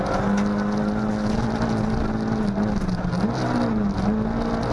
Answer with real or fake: real